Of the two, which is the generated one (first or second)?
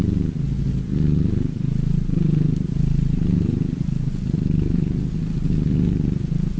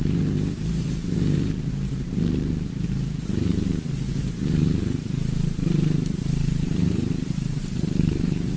second